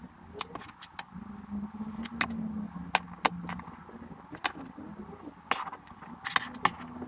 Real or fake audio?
real